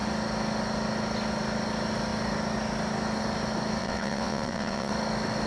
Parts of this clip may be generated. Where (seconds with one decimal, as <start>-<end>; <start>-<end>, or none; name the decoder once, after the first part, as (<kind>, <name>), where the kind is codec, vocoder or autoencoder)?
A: 3.8-4.9 (vocoder, WaveNeXt)